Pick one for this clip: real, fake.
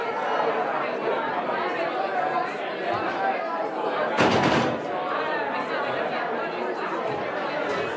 real